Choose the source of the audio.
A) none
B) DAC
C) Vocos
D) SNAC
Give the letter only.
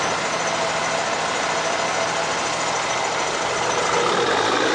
A